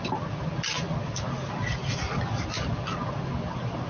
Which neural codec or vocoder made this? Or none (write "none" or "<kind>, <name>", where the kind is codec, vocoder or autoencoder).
none